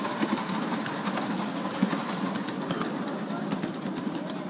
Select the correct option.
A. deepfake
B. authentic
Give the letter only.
B